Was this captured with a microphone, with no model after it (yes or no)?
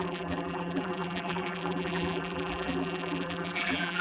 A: no